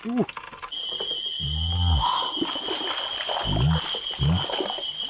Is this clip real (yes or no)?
yes